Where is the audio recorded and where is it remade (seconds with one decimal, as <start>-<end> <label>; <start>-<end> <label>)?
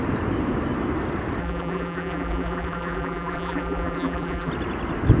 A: 0.0-1.4 recorded; 1.4-4.5 remade; 4.5-5.2 recorded